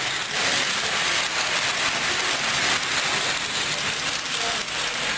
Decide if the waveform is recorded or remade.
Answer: recorded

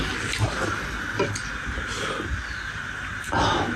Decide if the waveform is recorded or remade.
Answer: recorded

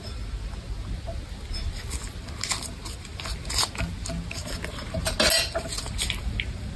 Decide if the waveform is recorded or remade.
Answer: recorded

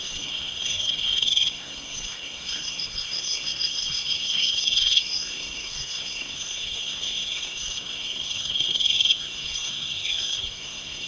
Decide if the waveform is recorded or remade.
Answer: remade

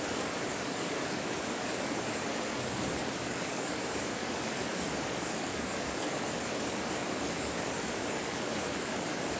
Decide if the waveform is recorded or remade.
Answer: remade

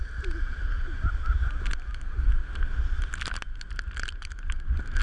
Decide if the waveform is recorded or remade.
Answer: recorded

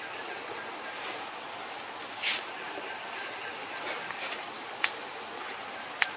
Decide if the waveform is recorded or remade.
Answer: recorded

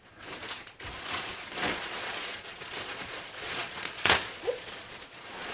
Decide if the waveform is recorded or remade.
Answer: remade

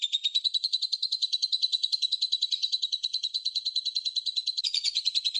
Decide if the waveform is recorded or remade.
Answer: remade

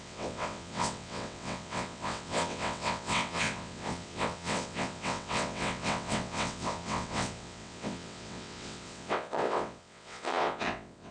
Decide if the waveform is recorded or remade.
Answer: remade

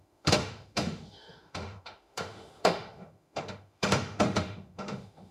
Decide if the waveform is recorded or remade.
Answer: remade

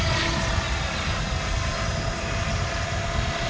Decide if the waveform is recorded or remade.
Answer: recorded